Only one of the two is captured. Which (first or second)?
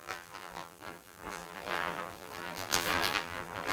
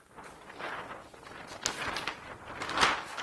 second